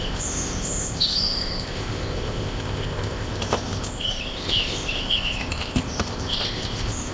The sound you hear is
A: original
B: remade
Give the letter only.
B